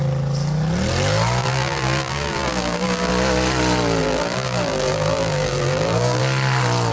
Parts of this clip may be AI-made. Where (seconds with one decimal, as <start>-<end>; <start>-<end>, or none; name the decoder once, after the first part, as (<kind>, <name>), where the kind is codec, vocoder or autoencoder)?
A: 1.4-3.1 (vocoder, BigVGAN v2); 4.0-6.2